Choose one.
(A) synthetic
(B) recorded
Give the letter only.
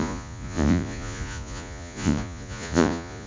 A